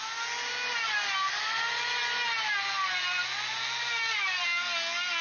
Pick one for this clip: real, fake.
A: real